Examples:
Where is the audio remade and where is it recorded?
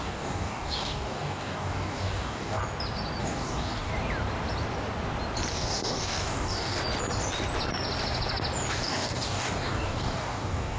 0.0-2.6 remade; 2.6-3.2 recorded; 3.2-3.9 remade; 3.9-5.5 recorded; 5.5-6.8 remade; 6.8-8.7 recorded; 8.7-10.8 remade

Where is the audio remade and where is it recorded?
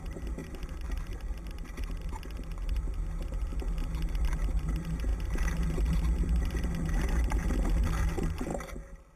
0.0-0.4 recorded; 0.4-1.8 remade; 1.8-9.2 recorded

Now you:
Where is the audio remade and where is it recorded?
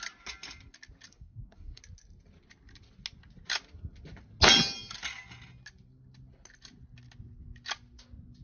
0.0-1.1 recorded; 1.1-1.8 remade; 1.8-8.4 recorded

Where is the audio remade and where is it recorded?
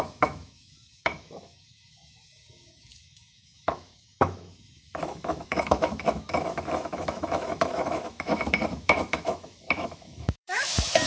0.0-11.1 remade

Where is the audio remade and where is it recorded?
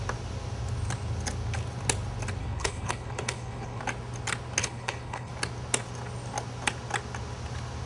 0.0-2.4 recorded; 2.4-3.8 remade; 3.8-4.6 recorded; 4.6-5.3 remade; 5.3-7.9 recorded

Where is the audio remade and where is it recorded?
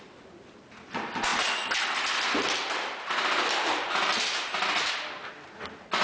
0.0-6.0 recorded